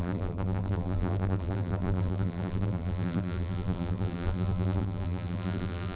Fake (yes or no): yes